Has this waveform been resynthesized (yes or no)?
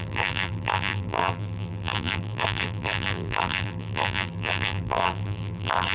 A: yes